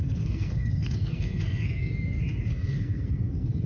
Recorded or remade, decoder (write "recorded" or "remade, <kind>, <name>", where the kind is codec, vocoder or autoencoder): remade, codec, SNAC